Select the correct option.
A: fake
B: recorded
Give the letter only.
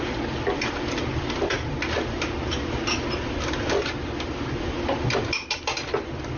B